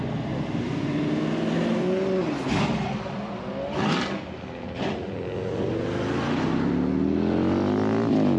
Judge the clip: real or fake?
real